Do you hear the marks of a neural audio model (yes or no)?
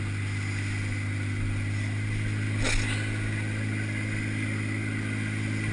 no